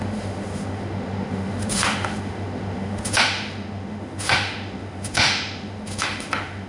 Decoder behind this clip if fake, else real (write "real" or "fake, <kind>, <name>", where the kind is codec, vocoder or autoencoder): fake, autoencoder, DAC-VAE